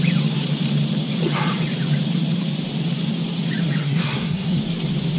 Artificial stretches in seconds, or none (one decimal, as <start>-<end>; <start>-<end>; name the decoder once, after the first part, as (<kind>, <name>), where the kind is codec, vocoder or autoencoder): 3.8-4.6 (codec, SNAC)